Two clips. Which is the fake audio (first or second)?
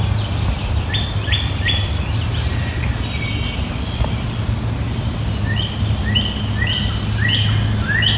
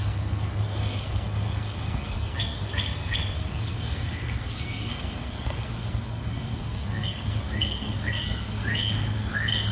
second